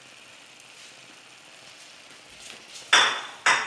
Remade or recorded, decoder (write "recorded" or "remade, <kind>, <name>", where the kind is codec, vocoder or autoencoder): recorded